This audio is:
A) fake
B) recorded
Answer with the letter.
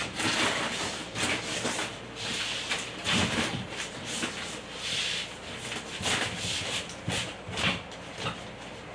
B